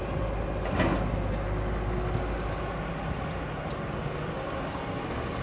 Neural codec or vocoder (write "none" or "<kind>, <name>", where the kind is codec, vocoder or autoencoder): none